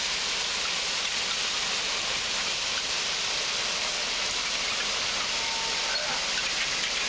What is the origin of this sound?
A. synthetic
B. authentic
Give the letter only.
B